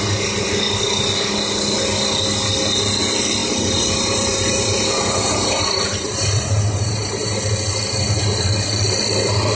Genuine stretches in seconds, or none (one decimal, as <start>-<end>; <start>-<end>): 0.0-3.4; 7.4-9.5